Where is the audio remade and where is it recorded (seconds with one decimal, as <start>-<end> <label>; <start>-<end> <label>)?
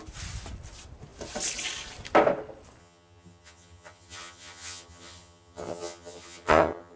0.0-2.8 recorded; 2.8-7.0 remade